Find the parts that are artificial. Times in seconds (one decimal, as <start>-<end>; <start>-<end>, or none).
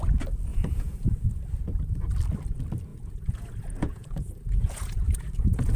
0.5-1.4; 2.9-5.8